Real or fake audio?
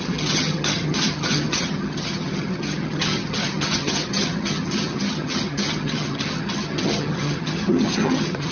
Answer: fake